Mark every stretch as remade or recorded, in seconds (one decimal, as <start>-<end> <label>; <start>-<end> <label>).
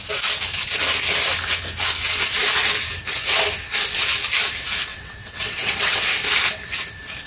0.0-4.9 recorded; 4.9-6.0 remade; 6.0-7.3 recorded